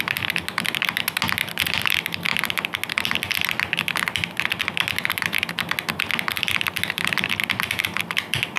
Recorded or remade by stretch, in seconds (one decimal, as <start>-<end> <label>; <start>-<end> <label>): 0.0-1.4 recorded; 1.4-1.9 remade; 1.9-8.6 recorded